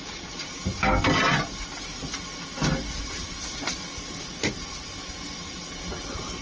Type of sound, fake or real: real